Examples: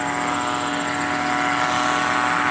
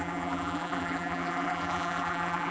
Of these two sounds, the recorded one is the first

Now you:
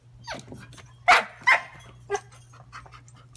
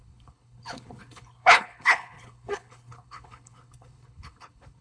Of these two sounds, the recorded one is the first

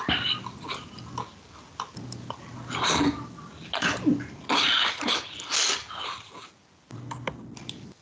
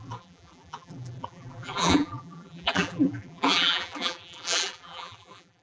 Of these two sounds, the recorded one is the first